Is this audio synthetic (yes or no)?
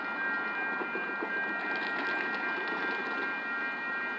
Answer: no